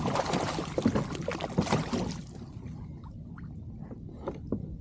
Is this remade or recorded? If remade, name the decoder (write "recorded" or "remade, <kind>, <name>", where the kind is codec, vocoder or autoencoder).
recorded